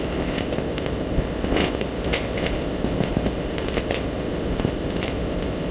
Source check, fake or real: fake